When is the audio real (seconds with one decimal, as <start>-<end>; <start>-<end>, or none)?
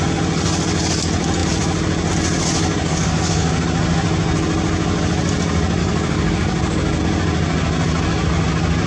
0.0-2.6; 3.6-5.8; 7.0-8.9